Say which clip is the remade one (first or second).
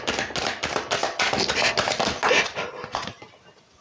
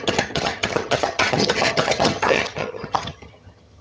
second